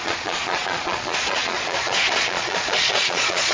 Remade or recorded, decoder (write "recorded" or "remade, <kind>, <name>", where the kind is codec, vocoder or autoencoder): remade, vocoder, Vocos